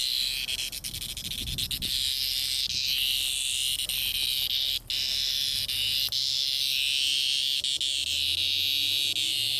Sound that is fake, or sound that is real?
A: real